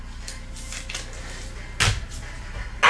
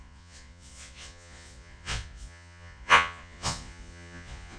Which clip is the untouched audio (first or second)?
first